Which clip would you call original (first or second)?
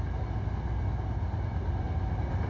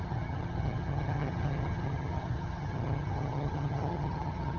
first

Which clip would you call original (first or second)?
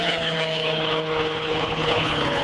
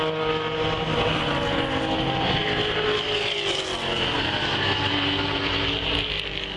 second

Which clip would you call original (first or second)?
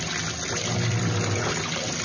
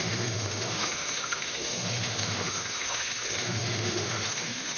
first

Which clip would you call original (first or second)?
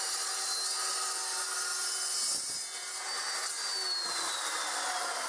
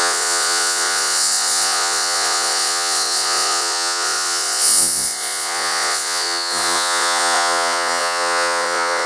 first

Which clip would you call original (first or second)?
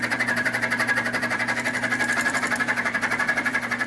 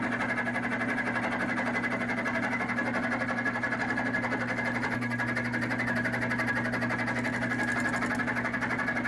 second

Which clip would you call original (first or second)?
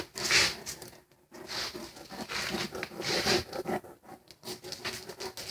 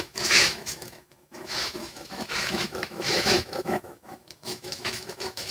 first